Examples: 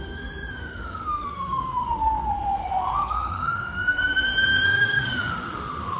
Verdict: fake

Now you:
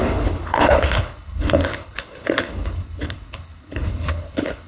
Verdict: fake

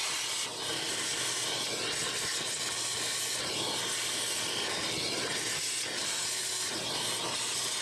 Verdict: real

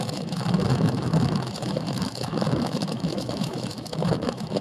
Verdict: fake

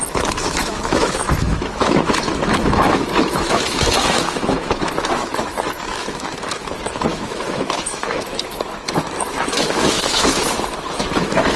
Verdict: fake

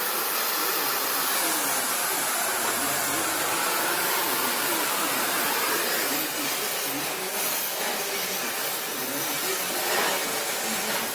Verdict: real